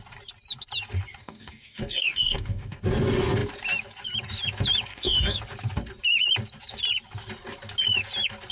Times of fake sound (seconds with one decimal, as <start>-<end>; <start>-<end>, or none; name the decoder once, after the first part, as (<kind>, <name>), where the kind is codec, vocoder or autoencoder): 1.2-2.8 (codec, DAC); 4.9-5.4